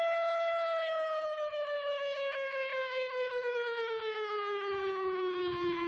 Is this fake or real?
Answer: fake